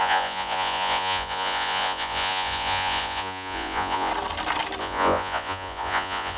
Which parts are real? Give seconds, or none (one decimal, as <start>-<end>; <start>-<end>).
4.1-4.8